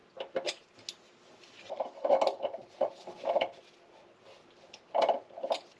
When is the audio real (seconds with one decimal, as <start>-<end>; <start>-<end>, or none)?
0.0-5.8